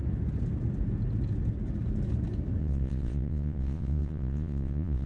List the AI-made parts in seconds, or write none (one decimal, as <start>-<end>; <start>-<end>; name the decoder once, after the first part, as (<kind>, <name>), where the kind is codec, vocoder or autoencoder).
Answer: 2.6-5.1 (vocoder, Vocos)